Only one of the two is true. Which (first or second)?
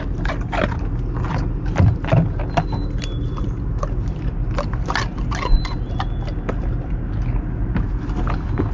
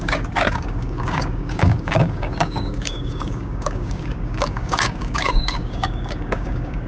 first